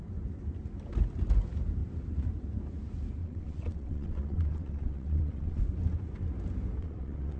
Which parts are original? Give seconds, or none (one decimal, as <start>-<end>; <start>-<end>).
0.0-3.2; 5.6-6.8